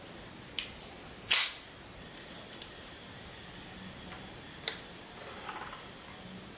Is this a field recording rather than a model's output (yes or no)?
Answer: yes